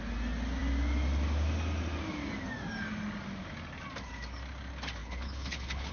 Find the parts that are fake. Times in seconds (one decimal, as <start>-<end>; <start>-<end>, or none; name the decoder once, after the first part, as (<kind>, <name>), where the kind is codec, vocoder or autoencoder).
5.0-5.9 (codec, HILCodec)